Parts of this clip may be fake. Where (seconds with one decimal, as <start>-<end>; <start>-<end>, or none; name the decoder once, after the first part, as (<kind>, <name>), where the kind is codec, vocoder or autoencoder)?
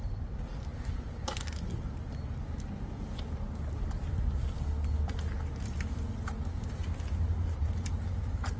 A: none